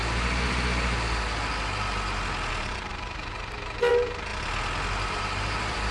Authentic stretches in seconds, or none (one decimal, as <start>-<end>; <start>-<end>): 0.0-2.5; 4.3-5.1